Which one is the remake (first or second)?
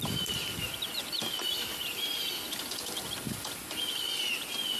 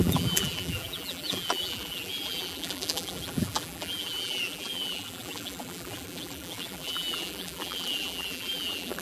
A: second